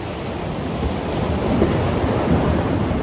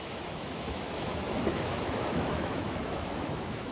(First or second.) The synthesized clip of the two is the second